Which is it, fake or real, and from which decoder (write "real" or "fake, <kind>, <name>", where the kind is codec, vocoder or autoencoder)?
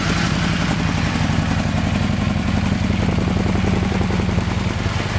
fake, vocoder, BigVGAN v2